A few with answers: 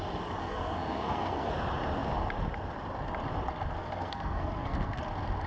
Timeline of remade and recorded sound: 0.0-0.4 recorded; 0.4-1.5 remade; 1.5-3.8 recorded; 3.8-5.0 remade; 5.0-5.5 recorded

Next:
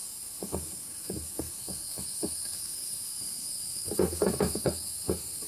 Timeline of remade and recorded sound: 0.0-5.5 remade

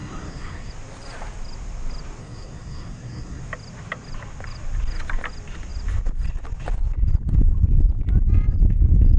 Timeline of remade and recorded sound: 0.0-0.7 remade; 0.7-2.2 recorded; 2.2-3.4 remade; 3.4-9.2 recorded